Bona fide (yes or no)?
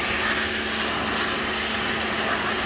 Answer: yes